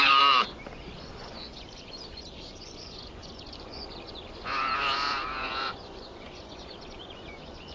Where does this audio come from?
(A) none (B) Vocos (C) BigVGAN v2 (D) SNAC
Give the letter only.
B